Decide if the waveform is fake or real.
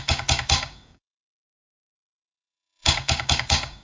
fake